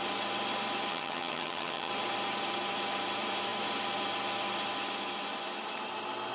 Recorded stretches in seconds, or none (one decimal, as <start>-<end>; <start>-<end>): 0.0-0.9; 1.9-6.3